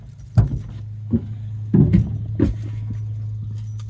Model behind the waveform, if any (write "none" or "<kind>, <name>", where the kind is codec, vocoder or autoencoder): none